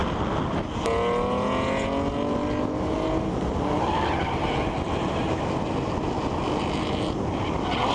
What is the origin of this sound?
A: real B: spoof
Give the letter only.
A